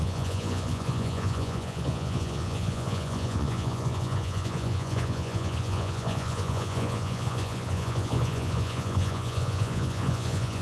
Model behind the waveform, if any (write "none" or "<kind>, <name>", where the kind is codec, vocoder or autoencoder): vocoder, Vocos